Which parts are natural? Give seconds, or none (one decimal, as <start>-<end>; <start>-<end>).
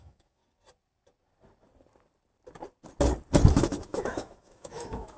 0.4-3.5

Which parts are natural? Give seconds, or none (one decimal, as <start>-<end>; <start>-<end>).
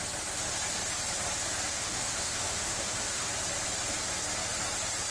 0.0-1.7; 3.3-5.1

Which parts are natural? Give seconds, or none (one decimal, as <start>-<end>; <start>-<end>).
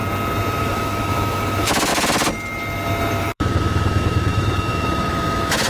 0.0-0.6; 1.9-3.2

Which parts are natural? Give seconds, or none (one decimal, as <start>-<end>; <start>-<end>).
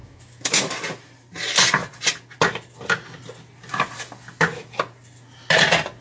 0.7-6.0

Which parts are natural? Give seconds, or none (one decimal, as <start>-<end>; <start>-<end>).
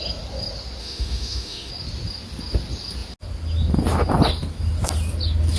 0.0-0.8; 1.7-5.6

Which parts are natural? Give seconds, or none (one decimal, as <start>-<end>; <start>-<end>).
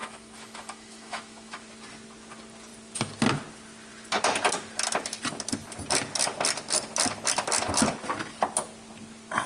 1.7-9.5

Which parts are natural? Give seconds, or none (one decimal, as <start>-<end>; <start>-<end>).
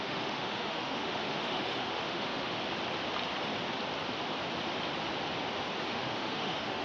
2.6-5.9